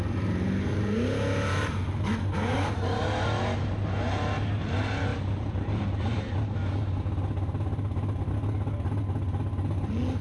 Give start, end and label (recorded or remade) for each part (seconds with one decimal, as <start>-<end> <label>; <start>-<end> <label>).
0.0-5.1 recorded; 5.1-6.3 remade; 6.3-10.2 recorded